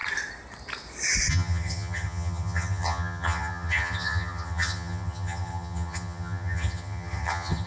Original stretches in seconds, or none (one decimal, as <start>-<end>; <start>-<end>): 0.0-1.3

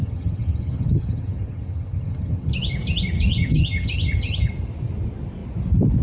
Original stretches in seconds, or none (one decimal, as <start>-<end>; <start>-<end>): 2.5-3.3; 4.5-6.0